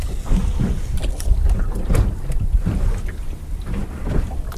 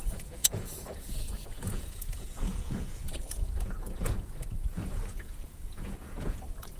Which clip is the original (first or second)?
first